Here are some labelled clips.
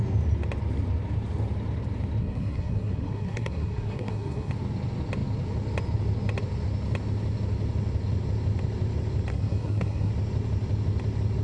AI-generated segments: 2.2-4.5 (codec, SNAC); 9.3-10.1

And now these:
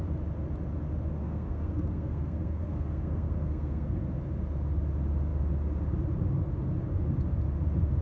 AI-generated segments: 1.2-4.0 (codec, SNAC)

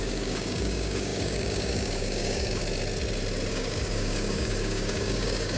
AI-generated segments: 0.0-2.6 (codec, DAC); 3.5-5.6